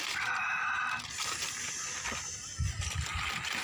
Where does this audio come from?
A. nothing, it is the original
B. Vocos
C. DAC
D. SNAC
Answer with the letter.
A